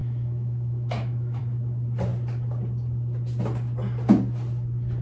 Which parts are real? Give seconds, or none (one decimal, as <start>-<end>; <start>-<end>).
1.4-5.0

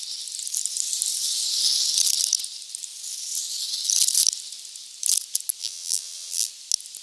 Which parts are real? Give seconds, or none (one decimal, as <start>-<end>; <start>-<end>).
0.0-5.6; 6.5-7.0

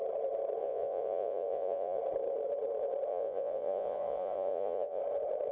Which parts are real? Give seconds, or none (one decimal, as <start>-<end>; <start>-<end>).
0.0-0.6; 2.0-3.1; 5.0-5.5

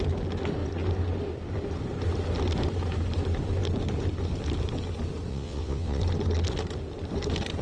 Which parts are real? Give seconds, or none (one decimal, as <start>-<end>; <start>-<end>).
0.0-5.3; 6.0-7.6

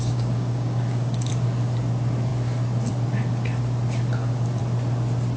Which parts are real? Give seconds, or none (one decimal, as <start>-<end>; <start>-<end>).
1.3-5.4

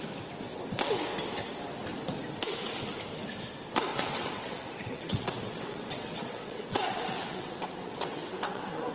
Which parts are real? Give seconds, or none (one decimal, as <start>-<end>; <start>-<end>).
0.0-3.9